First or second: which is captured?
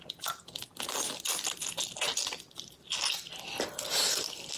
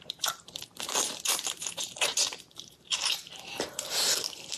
first